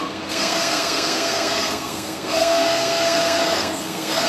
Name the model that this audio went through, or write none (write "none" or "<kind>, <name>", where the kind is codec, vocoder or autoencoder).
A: codec, SNAC